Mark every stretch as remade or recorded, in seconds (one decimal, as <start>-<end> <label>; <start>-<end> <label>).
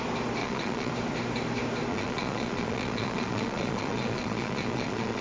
0.0-0.4 recorded; 0.4-0.9 remade; 0.9-1.9 recorded; 1.9-5.2 remade